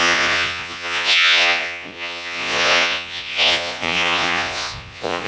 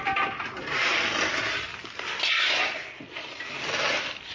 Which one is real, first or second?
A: second